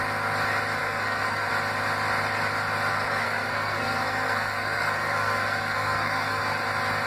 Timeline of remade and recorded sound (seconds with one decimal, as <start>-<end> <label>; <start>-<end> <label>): 0.0-0.8 recorded; 0.8-1.5 remade; 1.5-2.9 recorded; 2.9-6.4 remade; 6.4-7.1 recorded

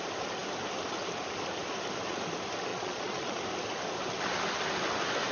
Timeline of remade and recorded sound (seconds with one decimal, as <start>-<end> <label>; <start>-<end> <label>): 0.0-2.7 recorded; 2.7-3.4 remade; 3.4-5.3 recorded